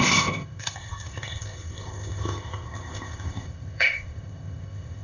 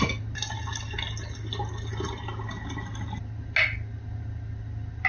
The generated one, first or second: first